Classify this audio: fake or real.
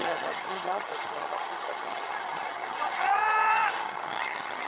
fake